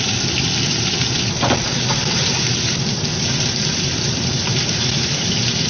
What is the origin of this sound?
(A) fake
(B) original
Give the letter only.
A